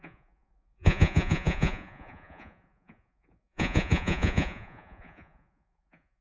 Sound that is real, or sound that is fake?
fake